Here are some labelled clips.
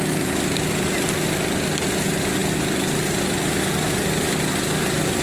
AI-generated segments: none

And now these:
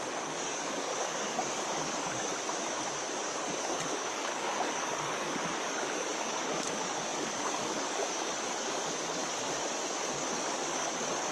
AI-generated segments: 0.0-2.3 (codec, DAC); 3.2-9.2; 10.1-11.3